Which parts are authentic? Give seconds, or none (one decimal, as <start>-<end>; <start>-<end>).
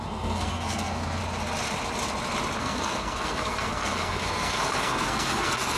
1.2-2.6